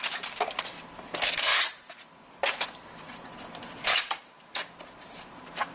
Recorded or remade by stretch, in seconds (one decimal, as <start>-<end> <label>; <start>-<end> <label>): 0.0-1.5 remade; 1.5-2.3 recorded; 2.3-5.7 remade